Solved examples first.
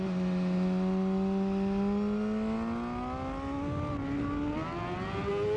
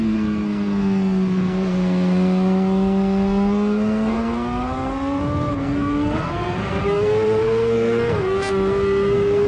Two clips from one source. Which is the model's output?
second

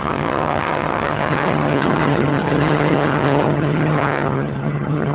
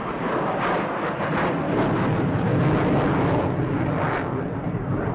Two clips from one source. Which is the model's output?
first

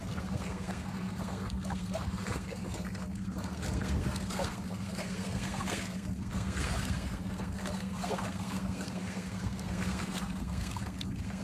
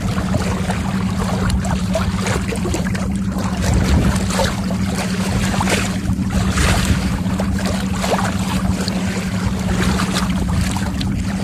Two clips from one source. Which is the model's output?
first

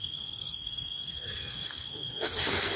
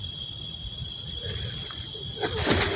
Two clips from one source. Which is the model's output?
first